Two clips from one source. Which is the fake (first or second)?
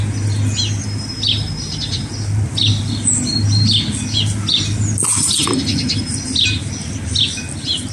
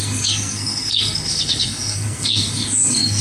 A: second